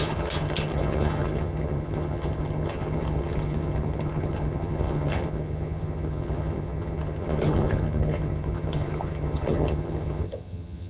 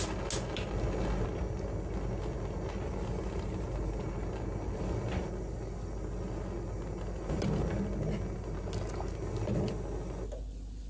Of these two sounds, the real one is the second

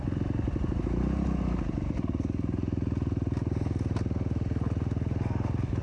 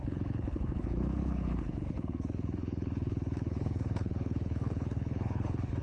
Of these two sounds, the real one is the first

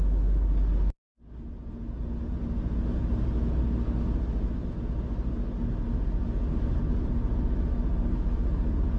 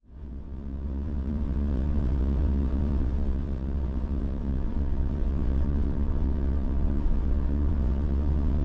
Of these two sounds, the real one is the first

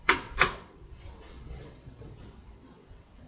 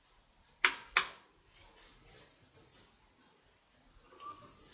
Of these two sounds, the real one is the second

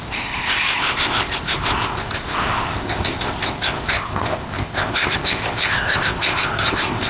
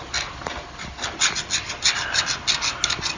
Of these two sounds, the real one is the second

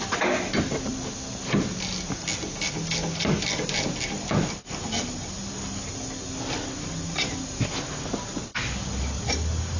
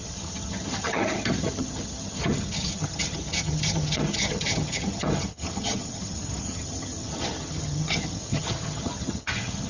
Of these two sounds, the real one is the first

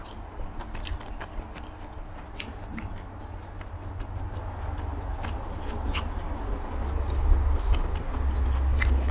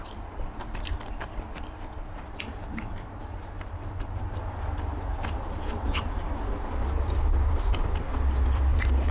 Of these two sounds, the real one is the first